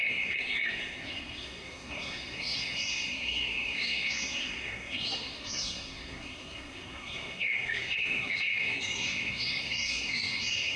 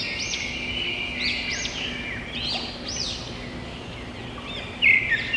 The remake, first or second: first